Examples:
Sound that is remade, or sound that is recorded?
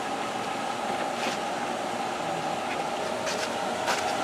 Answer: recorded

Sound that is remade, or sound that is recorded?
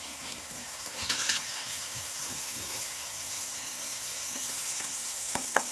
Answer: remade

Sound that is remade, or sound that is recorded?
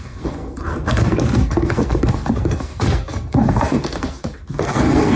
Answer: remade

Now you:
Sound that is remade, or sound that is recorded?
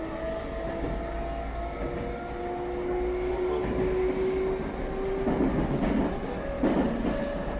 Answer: recorded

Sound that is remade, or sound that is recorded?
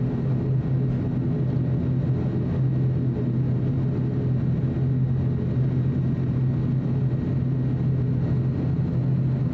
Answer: recorded